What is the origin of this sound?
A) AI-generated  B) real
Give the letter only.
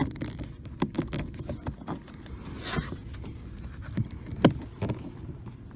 B